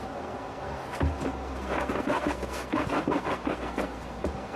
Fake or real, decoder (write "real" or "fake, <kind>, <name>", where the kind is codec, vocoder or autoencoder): fake, codec, SNAC